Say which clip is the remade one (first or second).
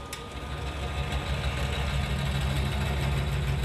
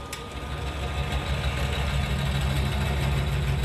second